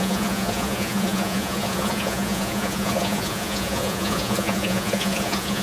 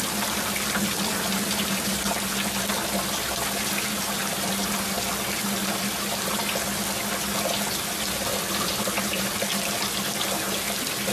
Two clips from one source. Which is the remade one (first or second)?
first